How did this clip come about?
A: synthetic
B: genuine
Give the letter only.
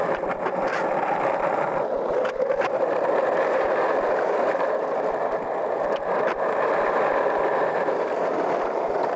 A